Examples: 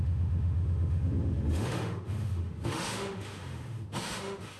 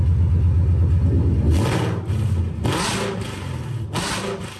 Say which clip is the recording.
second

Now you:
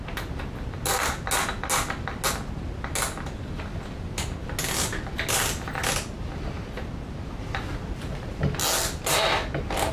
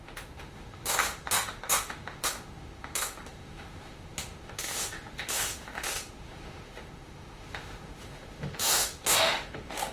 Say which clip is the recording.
first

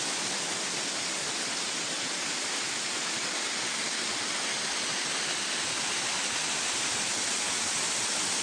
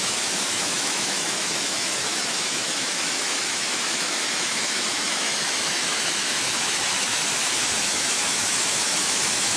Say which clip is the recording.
first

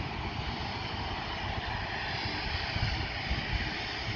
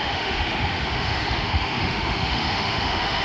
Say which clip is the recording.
first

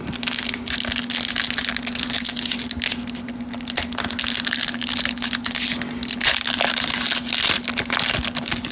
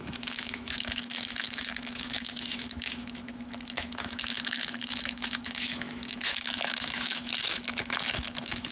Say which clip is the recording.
first